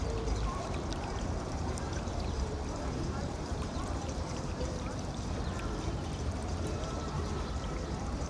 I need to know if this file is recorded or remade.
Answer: remade